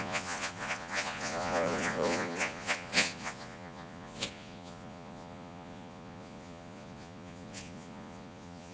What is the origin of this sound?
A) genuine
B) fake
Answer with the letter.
B